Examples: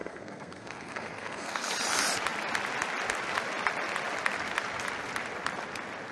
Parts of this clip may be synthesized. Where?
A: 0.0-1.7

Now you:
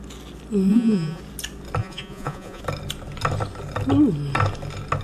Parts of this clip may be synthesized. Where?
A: 0.7-1.2; 1.8-2.6

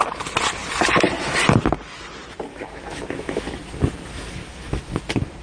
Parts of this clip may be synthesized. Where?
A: 2.5-3.5; 4.1-5.0

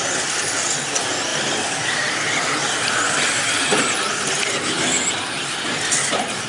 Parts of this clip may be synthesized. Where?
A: none

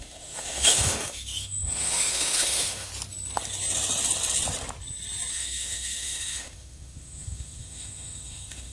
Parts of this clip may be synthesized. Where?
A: 0.0-2.9; 5.3-8.7

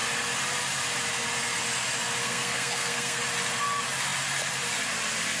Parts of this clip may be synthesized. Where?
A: 2.2-3.2